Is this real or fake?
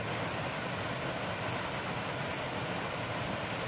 real